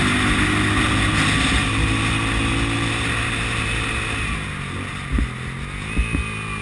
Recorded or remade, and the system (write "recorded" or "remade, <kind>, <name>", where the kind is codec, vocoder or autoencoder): recorded